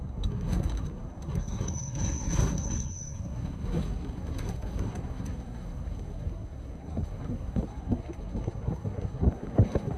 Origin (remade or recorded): remade